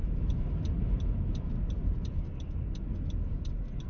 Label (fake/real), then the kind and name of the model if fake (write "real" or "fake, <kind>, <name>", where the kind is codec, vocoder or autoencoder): real